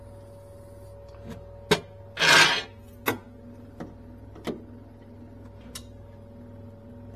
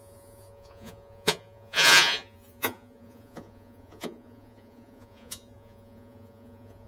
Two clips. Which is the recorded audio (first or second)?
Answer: first